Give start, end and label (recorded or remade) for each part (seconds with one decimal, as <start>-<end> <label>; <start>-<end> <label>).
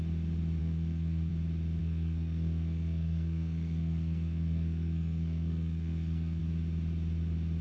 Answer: 0.0-0.6 recorded; 0.6-1.3 remade; 1.3-1.8 recorded; 1.8-6.4 remade; 6.4-7.6 recorded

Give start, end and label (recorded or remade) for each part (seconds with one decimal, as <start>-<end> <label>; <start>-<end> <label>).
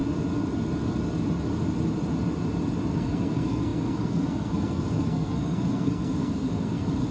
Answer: 0.0-2.9 recorded; 2.9-7.1 remade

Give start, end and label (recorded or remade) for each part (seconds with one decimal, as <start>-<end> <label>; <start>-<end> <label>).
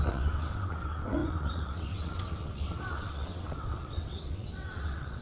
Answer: 0.0-5.2 remade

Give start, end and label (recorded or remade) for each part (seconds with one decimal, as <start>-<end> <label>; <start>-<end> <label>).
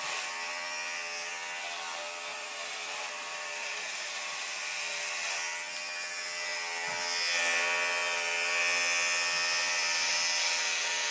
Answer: 0.0-2.3 recorded; 2.3-4.8 remade; 4.8-11.1 recorded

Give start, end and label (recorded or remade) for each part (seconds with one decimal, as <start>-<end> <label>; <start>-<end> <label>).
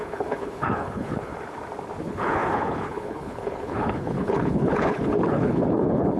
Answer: 0.0-1.3 remade; 1.3-2.0 recorded; 2.0-6.2 remade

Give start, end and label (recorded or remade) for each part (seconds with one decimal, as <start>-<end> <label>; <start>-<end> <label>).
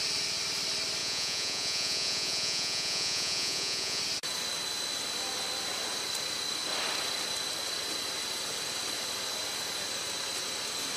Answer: 0.0-1.0 recorded; 1.0-4.0 remade; 4.0-11.0 recorded